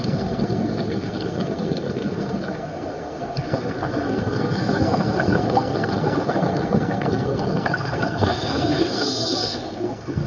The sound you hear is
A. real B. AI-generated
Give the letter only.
B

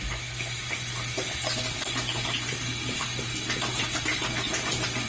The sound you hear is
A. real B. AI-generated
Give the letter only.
A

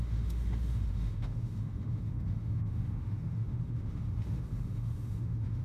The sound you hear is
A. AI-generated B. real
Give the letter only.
A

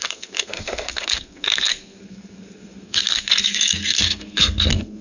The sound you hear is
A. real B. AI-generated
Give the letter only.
B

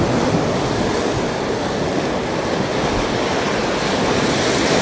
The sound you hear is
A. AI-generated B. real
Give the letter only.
B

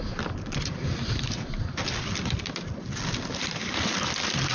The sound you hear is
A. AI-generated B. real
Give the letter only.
A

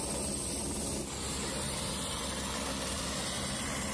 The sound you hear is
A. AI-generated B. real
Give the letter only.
B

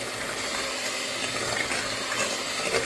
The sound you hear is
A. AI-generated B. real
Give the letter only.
B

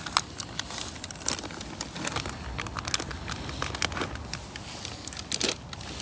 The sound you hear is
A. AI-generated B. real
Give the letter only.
B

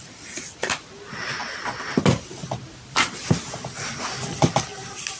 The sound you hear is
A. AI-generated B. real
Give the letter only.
B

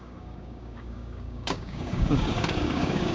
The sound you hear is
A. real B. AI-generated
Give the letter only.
B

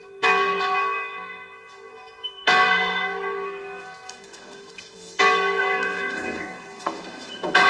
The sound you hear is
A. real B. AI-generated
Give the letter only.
B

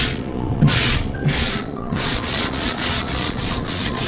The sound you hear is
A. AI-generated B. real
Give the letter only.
A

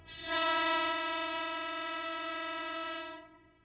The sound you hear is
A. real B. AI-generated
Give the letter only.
B